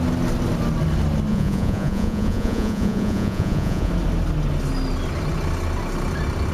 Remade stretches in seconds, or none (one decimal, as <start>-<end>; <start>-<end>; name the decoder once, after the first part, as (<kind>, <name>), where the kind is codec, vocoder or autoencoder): 1.3-3.9 (vocoder, Vocos)